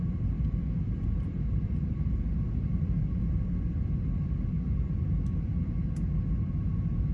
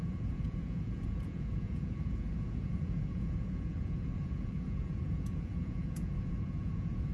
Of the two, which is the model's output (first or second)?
second